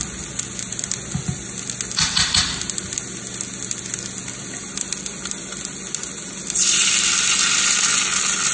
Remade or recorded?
recorded